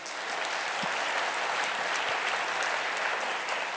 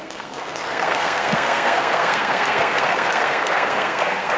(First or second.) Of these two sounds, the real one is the first